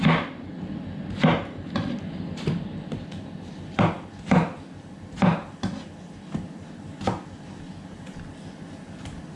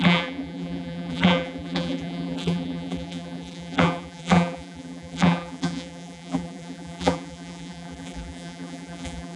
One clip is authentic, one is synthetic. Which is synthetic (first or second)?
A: second